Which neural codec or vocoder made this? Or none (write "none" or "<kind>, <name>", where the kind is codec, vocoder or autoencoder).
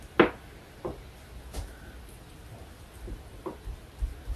none